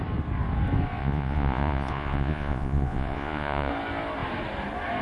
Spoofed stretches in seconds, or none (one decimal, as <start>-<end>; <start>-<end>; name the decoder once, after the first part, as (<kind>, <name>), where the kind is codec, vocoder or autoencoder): 1.0-3.7 (vocoder, Vocos)